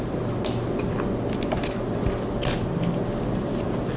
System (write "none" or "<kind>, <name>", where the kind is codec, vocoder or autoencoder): none